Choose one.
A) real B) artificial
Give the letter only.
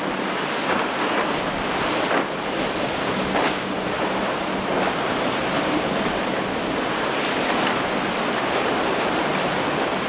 A